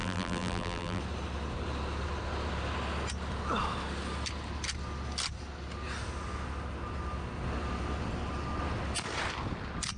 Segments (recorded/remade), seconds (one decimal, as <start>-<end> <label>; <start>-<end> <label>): 0.0-1.0 remade; 1.0-10.0 recorded

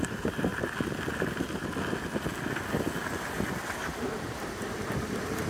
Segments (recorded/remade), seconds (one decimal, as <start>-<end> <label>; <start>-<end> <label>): 0.0-0.5 remade; 0.5-3.8 recorded; 3.8-5.5 remade

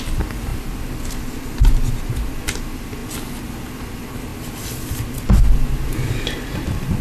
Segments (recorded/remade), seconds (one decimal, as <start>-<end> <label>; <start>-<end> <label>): 0.0-7.0 recorded

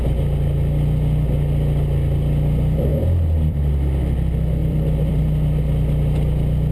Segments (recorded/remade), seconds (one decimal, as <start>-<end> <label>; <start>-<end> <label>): 0.0-2.9 recorded; 2.9-3.7 remade; 3.7-4.6 recorded; 4.6-5.2 remade; 5.2-6.7 recorded

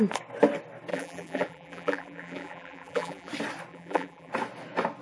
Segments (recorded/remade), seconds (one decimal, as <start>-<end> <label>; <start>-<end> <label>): 0.0-0.9 recorded; 0.9-3.3 remade; 3.3-3.7 recorded; 3.7-4.3 remade; 4.3-5.0 recorded